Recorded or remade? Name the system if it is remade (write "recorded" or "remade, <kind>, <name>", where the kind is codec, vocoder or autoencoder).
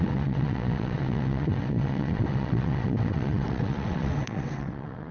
remade, vocoder, WaveNeXt